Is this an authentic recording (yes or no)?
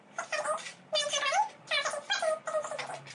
no